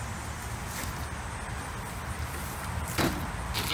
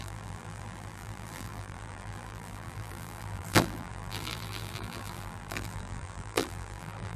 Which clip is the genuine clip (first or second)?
first